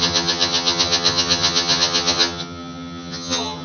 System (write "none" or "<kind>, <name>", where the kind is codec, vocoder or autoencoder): vocoder, HiFi-GAN